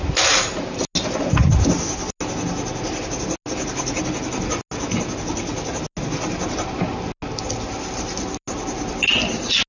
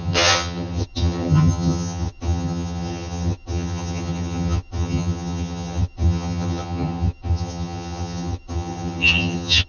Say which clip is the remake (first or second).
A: second